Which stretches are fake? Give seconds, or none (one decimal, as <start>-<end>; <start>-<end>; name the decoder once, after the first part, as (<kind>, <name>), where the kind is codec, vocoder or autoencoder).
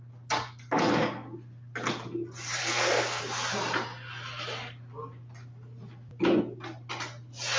2.6-3.2 (codec, SNAC)